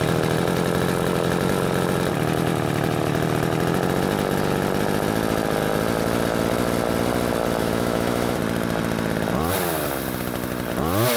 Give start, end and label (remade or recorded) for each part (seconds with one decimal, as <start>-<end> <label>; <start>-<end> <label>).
0.0-7.6 recorded; 7.6-8.4 remade; 8.4-11.2 recorded